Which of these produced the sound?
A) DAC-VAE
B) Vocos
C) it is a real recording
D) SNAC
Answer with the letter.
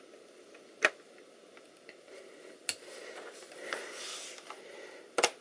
C